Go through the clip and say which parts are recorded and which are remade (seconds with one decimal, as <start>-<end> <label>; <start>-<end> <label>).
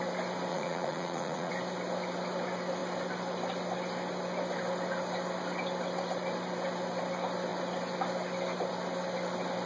0.0-0.5 recorded; 0.5-1.5 remade; 1.5-9.7 recorded